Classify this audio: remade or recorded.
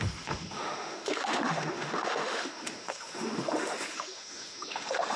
remade